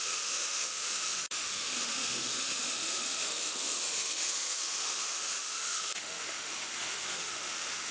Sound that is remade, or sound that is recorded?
remade